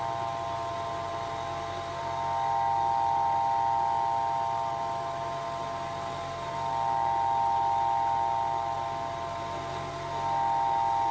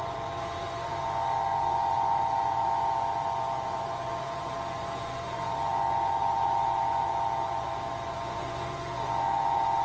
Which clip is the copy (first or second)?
second